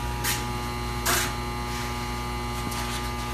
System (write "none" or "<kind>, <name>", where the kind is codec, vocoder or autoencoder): none